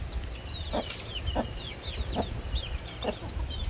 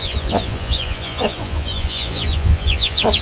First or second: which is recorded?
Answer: first